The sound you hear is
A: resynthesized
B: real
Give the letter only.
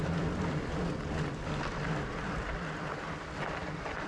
B